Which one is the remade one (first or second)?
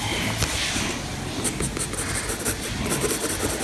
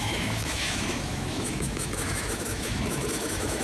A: second